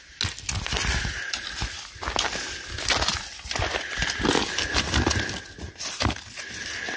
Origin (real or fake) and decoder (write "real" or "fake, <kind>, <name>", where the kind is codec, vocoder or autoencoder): real